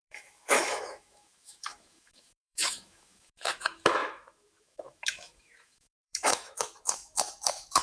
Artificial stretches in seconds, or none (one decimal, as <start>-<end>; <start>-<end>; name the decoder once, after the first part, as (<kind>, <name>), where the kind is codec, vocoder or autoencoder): 0.0-7.8 (autoencoder, DAC-VAE)